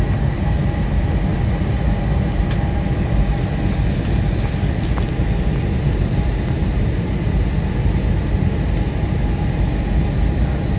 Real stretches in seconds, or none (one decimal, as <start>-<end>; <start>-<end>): 0.0-10.8

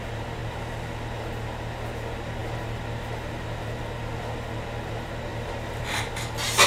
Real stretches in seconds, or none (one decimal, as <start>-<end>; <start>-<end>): 0.0-5.3; 6.1-6.7

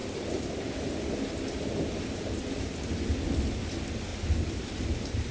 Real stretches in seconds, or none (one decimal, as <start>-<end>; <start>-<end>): 0.0-4.1

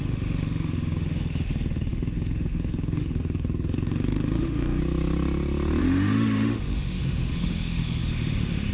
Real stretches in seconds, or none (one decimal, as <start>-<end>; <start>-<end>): 4.8-5.8

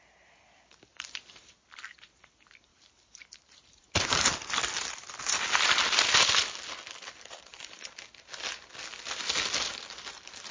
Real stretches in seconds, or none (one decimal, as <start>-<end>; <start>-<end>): 0.0-0.9; 1.5-2.7; 4.6-10.5

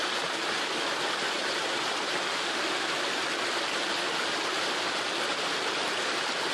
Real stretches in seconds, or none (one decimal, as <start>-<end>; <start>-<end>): 0.0-2.3; 2.9-6.5

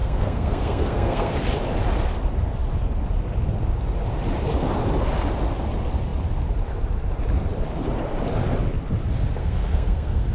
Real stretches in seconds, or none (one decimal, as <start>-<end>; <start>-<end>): 1.3-9.4

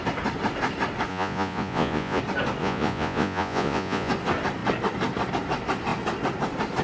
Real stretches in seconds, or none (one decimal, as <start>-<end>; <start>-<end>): 0.0-1.1; 2.2-2.6; 4.1-6.8